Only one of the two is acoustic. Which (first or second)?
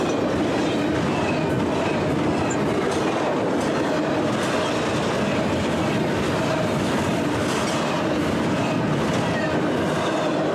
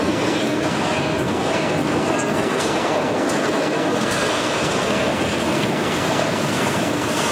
first